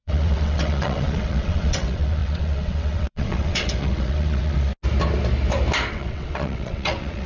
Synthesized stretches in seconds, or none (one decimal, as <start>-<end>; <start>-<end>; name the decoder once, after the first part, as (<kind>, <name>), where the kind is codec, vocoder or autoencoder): 0.0-4.7 (vocoder, WaveNeXt); 5.9-7.3